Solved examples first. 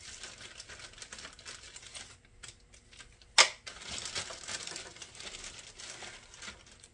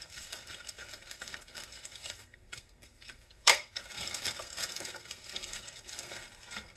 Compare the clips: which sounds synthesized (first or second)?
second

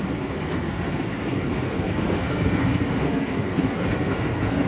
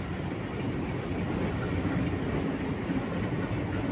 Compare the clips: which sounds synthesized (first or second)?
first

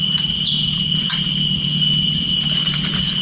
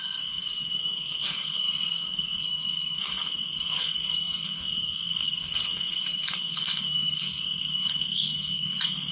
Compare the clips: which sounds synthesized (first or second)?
second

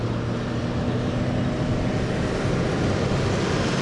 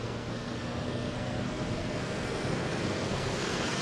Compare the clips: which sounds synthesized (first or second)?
second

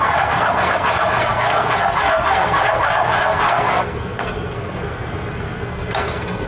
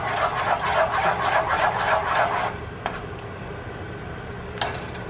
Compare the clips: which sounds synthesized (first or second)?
first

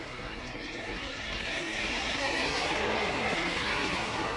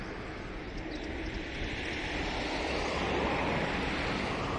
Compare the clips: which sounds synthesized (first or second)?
first